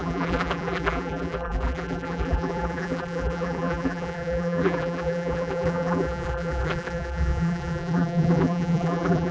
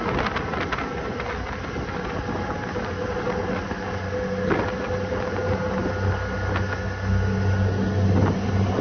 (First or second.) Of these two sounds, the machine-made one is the first